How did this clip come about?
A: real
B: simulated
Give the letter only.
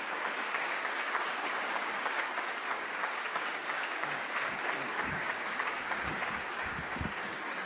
B